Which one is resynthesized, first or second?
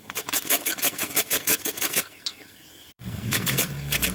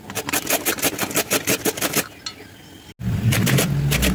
first